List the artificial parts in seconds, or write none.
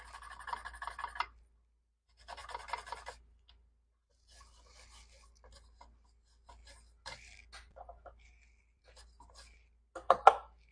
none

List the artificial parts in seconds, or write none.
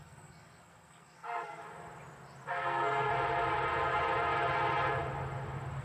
0.0-1.6; 2.5-3.1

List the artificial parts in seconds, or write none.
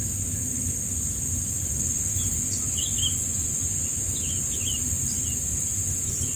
none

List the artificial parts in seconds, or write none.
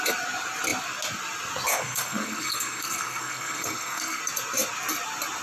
1.7-4.2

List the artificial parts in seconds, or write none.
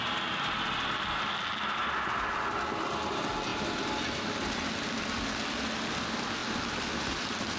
none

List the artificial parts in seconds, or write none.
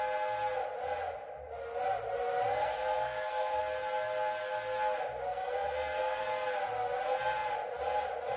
2.5-3.6; 5.3-6.2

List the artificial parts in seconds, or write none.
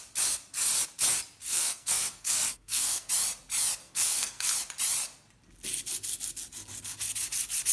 1.4-3.1; 3.8-4.5